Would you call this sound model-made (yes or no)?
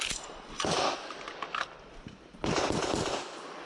no